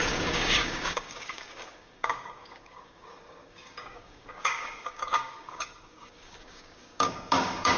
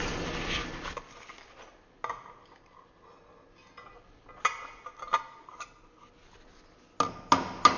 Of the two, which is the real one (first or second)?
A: second